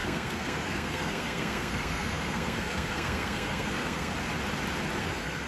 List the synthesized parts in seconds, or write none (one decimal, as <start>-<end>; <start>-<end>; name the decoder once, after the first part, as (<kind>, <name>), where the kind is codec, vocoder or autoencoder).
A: 0.0-4.1 (codec, SNAC); 5.0-5.5